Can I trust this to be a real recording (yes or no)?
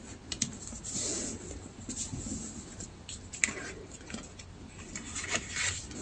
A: yes